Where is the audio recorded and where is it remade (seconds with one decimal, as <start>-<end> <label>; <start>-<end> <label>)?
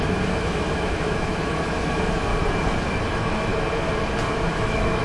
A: 0.0-2.3 remade; 2.3-3.1 recorded; 3.1-3.5 remade; 3.5-4.3 recorded; 4.3-5.0 remade